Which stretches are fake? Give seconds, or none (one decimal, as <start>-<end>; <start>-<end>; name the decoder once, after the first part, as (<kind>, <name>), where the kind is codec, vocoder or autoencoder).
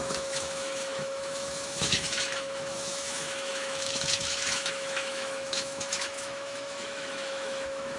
0.0-8.0 (autoencoder, DAC-VAE)